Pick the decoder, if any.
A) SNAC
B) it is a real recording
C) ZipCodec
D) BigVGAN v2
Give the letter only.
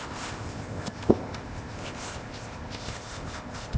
C